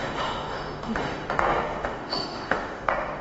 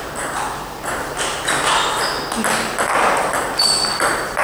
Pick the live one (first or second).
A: second